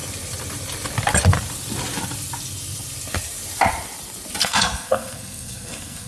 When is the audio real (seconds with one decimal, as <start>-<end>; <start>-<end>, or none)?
0.0-4.4